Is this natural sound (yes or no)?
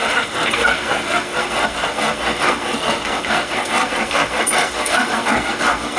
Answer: no